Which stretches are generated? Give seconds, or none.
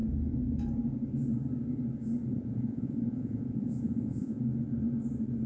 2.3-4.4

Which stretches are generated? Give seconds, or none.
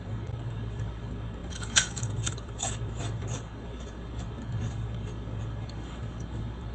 0.0-6.7